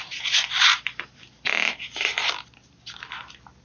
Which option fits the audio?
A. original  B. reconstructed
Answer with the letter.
A